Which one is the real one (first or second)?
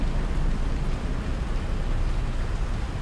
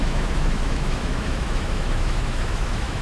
first